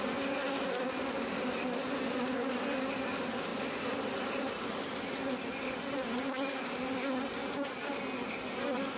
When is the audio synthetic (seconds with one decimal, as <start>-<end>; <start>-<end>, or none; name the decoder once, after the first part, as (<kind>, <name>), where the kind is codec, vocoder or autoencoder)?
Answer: none

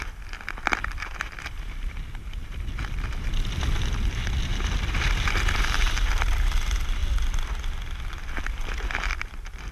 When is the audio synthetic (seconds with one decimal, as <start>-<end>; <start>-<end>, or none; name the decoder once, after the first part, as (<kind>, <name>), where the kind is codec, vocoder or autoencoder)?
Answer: 0.0-2.2 (vocoder, BigVGAN v2); 2.8-4.5; 5.6-7.0; 9.1-9.7

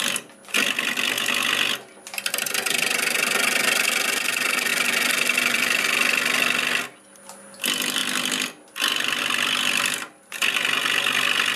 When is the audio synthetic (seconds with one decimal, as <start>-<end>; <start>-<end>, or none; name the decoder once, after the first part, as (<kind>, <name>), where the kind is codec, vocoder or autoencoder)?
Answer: 4.7-5.8 (vocoder, BigVGAN v2)

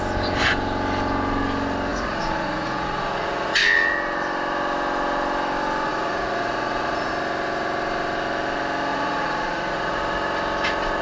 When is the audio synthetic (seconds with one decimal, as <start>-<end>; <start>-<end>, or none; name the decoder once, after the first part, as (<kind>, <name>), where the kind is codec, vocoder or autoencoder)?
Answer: 1.9-3.5 (vocoder, Vocos); 5.9-7.1; 8.9-10.0

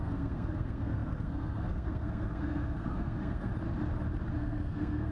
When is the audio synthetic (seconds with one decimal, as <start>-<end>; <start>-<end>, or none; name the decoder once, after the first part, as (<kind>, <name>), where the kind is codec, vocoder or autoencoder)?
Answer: 0.0-3.5 (codec, SNAC); 4.3-5.1